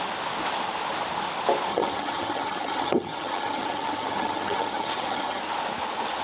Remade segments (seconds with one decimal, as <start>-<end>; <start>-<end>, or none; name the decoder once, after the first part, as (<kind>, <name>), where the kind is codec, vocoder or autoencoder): 1.7-5.4 (vocoder, HiFi-GAN)